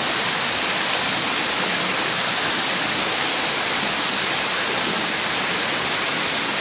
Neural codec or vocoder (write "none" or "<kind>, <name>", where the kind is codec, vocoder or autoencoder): none